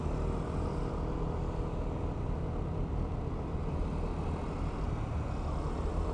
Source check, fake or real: real